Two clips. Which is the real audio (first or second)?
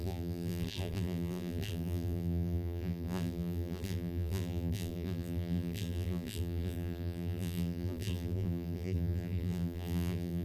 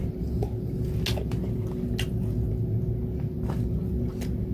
second